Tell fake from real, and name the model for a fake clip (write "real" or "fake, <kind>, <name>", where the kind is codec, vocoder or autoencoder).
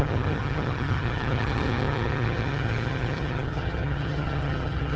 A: fake, vocoder, HiFi-GAN